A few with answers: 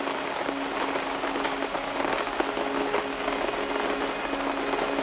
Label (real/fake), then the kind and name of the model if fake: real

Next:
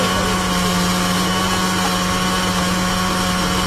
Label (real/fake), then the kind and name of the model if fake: real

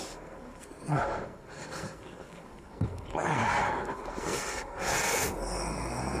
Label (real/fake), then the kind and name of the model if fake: fake, codec, SNAC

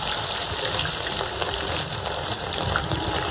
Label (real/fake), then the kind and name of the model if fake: real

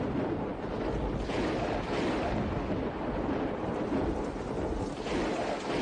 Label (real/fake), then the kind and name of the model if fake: real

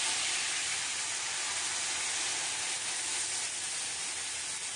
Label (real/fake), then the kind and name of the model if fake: real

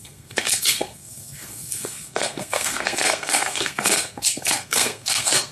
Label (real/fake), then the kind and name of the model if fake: fake, codec, SNAC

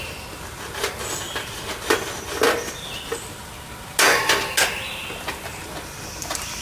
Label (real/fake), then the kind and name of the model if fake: real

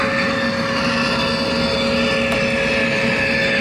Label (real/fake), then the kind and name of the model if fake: real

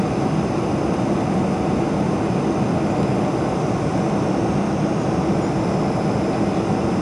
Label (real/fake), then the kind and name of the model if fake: real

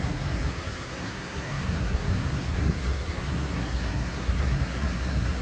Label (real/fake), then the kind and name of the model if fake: fake, codec, SNAC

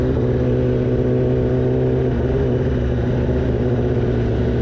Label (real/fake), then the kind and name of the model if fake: real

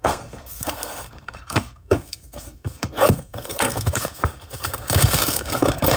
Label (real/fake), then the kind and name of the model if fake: fake, codec, SNAC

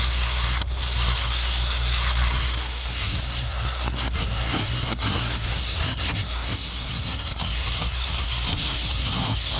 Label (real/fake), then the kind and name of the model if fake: fake, codec, SNAC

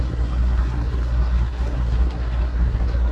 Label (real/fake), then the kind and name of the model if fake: fake, codec, SNAC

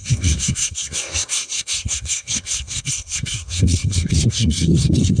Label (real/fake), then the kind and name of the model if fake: fake, codec, SNAC